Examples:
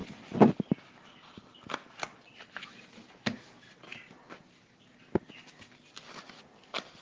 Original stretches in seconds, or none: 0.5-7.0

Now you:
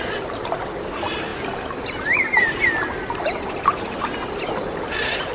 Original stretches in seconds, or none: 0.0-1.3; 4.5-5.3